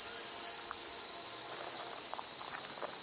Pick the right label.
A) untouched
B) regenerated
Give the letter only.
A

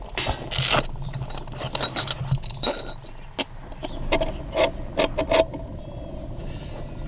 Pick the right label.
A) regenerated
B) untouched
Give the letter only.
B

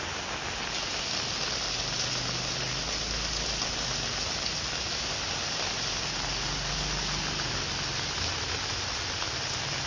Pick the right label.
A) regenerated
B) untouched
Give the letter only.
B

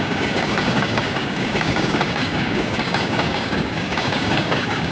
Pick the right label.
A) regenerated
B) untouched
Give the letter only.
A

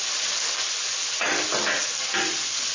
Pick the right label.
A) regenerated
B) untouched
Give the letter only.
B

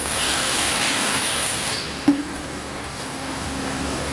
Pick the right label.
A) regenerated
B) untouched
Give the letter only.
A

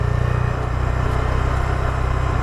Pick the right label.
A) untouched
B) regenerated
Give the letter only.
A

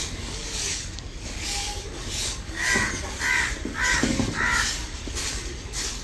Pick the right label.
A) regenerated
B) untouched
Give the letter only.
A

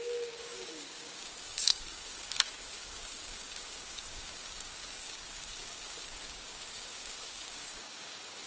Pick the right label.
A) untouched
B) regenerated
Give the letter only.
B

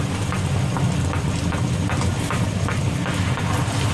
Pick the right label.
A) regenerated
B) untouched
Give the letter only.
B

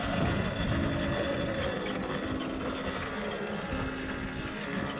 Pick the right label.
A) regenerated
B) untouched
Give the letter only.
B